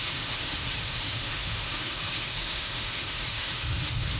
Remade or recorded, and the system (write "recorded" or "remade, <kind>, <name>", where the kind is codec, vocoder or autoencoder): remade, autoencoder, DAC-VAE